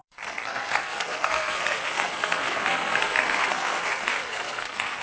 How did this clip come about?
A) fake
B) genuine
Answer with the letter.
A